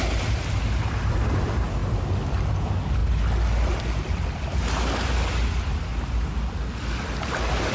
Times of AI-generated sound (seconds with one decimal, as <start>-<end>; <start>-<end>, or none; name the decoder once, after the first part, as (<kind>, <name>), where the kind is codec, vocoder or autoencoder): none